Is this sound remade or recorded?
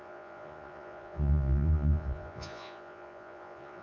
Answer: remade